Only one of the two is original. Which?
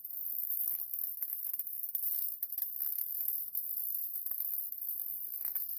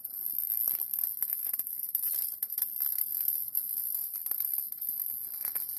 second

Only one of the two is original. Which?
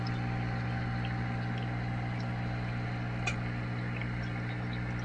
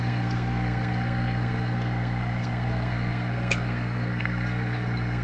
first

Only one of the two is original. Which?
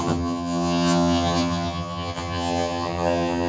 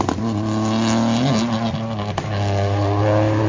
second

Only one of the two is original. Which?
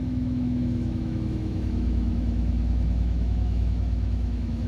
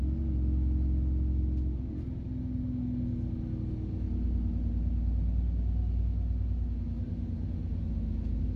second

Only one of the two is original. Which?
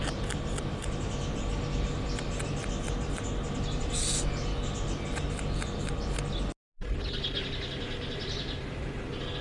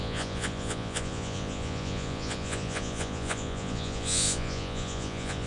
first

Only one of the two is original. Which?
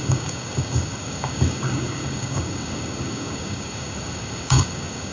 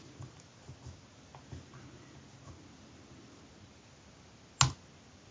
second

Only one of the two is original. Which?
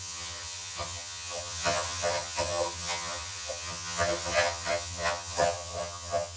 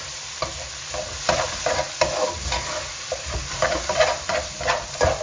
second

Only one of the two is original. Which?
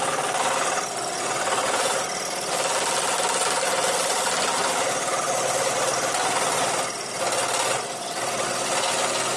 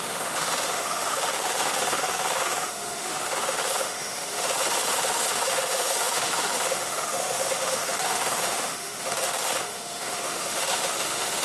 first